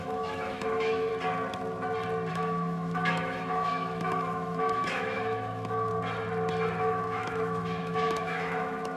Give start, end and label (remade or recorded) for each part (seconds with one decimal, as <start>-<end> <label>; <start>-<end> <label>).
0.0-1.1 remade; 1.1-2.3 recorded; 2.3-5.9 remade; 5.9-6.8 recorded; 6.8-9.0 remade